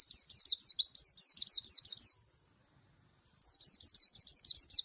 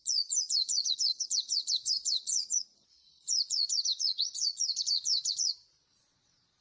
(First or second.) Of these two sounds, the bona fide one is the first